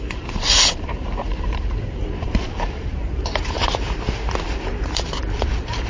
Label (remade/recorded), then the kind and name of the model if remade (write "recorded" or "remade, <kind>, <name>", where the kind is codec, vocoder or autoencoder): remade, vocoder, BigVGAN v2